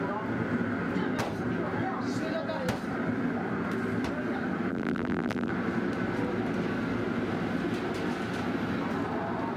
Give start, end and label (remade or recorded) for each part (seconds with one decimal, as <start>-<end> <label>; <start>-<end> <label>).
0.0-4.7 recorded; 4.7-5.5 remade; 5.5-9.6 recorded